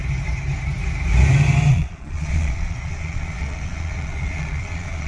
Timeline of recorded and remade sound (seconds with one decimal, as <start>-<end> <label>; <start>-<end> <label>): 0.0-1.7 recorded; 1.7-5.1 remade